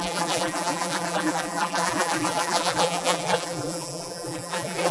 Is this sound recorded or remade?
remade